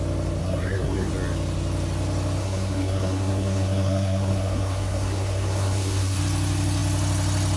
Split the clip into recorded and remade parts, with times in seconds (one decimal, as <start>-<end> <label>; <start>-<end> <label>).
0.0-0.4 recorded; 0.4-1.1 remade; 1.1-2.4 recorded; 2.4-6.2 remade; 6.2-7.6 recorded